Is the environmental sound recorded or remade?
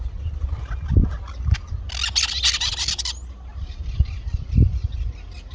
recorded